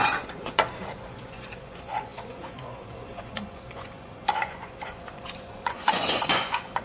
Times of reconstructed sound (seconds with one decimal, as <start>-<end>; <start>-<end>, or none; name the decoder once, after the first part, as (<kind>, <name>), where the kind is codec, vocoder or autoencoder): 0.0-6.8 (vocoder, Vocos)